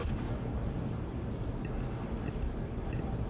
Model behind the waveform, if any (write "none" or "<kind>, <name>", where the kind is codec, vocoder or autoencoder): none